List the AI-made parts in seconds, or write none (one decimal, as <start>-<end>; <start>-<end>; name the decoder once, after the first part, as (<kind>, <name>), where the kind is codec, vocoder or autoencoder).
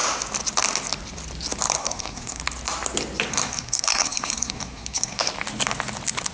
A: 1.8-2.4 (codec, SNAC); 3.3-5.3